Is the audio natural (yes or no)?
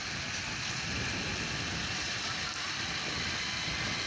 yes